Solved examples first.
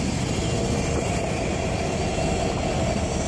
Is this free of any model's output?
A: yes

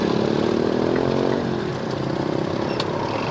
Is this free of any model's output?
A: yes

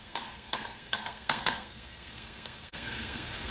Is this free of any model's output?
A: no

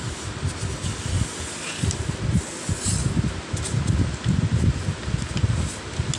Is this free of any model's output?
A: yes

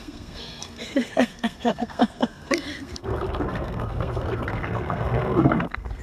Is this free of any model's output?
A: no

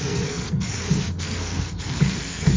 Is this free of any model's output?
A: no